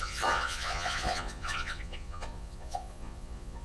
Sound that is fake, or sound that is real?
fake